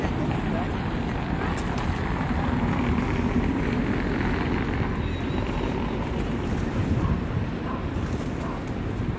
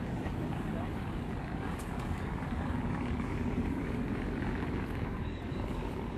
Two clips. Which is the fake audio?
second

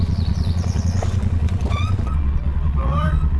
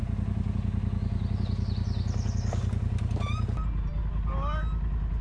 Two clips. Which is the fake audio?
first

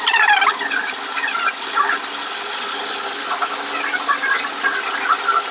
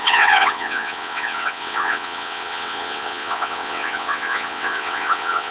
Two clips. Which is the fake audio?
second